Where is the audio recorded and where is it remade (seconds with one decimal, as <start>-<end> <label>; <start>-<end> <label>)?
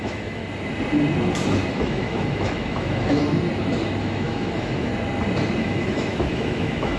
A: 0.0-0.4 remade; 0.4-1.7 recorded; 1.7-3.2 remade; 3.2-4.0 recorded; 4.0-4.9 remade; 4.9-5.6 recorded; 5.6-7.0 remade